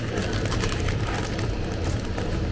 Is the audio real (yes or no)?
yes